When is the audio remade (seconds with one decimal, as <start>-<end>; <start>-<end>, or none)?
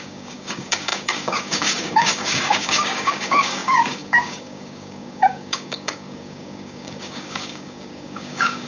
0.0-8.7